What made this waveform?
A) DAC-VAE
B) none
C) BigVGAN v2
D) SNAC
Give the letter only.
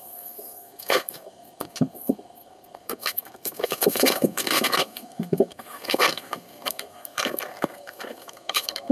D